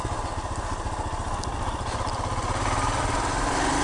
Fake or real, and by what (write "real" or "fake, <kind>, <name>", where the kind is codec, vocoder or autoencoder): real